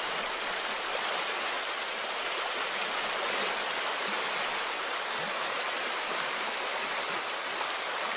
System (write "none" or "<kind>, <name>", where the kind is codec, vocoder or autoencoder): none